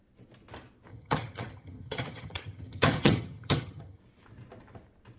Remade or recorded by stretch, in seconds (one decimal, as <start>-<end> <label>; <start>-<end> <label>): 0.0-0.9 recorded; 0.9-4.0 remade; 4.0-5.2 recorded